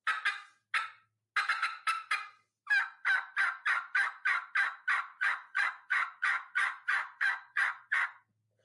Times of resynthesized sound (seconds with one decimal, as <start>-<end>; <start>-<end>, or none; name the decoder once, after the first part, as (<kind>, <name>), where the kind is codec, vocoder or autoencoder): 5.1-8.0 (vocoder, Vocos)